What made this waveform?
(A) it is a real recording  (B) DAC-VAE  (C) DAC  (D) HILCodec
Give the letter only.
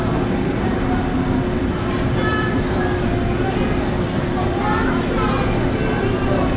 A